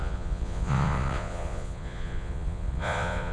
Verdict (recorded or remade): remade